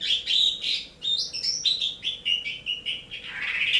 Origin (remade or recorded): recorded